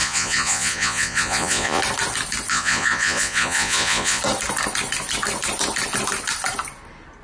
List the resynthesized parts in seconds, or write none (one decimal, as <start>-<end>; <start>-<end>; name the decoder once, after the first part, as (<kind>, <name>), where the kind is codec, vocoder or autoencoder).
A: 0.0-1.8 (vocoder, Vocos); 2.5-4.2